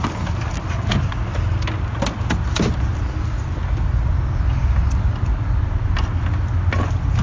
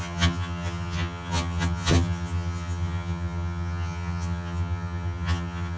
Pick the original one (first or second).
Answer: first